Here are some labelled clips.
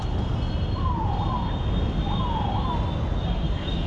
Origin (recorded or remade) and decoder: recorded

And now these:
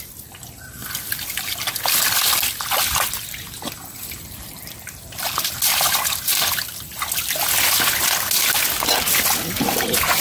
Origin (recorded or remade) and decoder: recorded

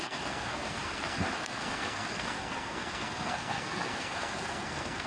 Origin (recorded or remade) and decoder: remade, codec, SNAC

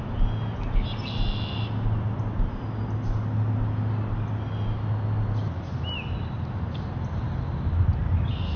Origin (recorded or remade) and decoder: recorded